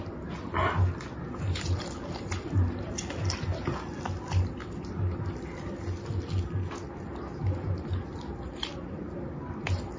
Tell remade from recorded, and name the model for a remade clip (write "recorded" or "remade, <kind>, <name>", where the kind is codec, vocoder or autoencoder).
recorded